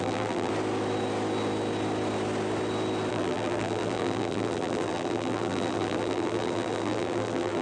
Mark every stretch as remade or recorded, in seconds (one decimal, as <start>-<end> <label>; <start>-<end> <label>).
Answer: 0.0-0.5 remade; 0.5-3.1 recorded; 3.1-7.6 remade